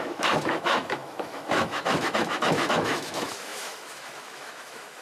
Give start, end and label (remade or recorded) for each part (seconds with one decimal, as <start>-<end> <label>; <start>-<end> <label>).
0.0-5.0 remade